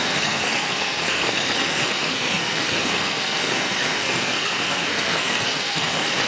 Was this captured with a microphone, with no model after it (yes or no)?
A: no